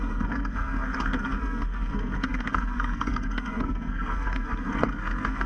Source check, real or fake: fake